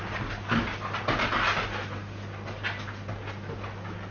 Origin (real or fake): real